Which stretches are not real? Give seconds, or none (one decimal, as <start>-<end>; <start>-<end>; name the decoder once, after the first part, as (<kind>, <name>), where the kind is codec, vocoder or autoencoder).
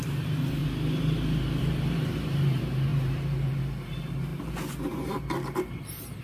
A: 0.0-0.6 (vocoder, BigVGAN v2); 1.6-6.2